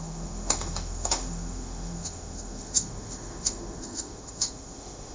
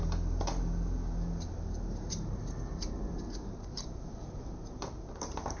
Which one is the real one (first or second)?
second